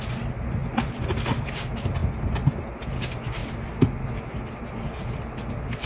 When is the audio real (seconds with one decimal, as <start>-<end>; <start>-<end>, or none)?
0.0-5.9